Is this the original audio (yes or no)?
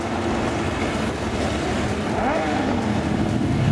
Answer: yes